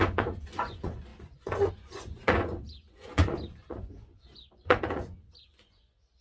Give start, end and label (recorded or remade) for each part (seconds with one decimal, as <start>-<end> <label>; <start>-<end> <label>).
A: 0.0-6.2 remade

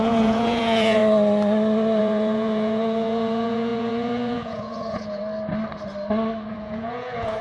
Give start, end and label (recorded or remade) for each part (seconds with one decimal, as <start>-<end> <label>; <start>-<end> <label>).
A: 0.0-1.0 remade; 1.0-2.0 recorded; 2.0-5.2 remade; 5.2-6.5 recorded; 6.5-7.4 remade